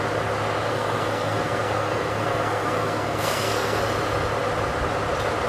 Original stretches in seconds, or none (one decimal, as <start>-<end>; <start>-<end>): 0.0-0.7; 3.8-5.5